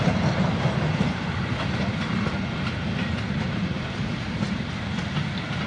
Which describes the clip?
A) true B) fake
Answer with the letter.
B